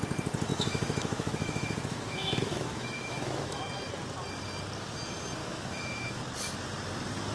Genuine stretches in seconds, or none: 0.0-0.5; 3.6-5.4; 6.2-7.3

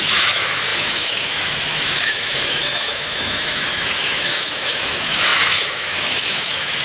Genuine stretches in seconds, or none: none

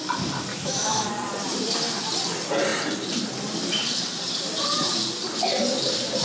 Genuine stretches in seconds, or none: 0.0-0.5; 1.1-6.2

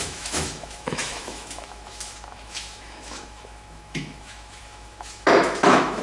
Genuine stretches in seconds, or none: none

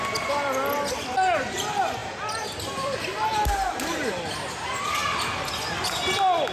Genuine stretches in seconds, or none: 0.0-6.5

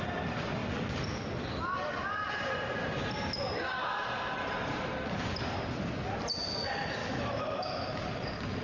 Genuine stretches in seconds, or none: 0.0-7.0; 8.1-8.6